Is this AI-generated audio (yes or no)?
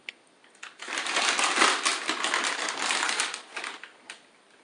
no